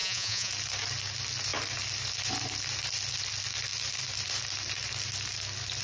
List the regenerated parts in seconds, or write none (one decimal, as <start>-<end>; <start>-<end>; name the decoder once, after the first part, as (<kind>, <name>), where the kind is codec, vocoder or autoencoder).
0.0-0.5 (vocoder, Vocos)